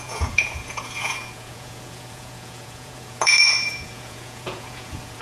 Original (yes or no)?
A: no